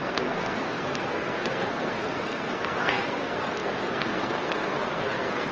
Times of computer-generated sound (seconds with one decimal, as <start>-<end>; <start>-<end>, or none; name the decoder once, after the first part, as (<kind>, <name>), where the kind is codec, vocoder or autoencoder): 0.0-5.5 (codec, SNAC)